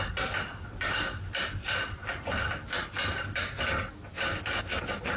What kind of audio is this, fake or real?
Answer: real